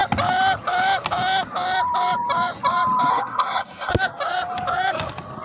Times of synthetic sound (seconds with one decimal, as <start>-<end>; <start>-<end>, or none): 3.1-3.9